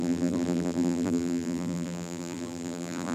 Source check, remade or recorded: remade